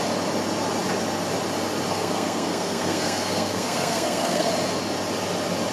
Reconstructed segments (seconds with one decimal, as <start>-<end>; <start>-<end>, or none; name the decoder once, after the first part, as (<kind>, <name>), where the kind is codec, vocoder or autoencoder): 1.9-4.5 (codec, SNAC)